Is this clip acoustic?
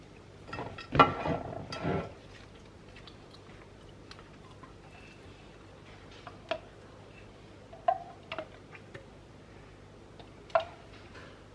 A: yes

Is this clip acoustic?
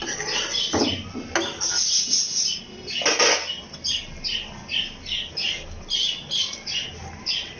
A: yes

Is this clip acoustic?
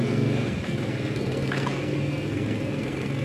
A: no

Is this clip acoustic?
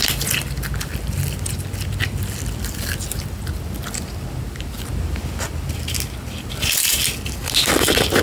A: yes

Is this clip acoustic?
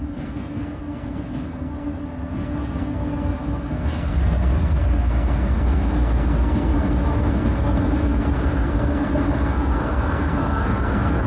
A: no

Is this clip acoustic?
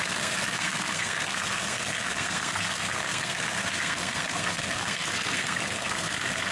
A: no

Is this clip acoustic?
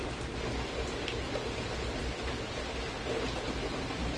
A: yes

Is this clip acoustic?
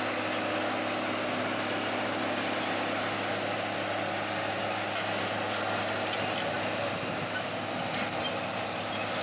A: yes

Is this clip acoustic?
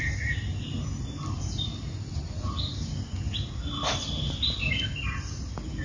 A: yes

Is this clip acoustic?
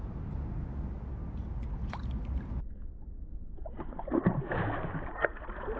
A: yes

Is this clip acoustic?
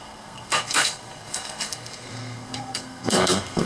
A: no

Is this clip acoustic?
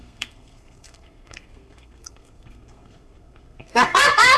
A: no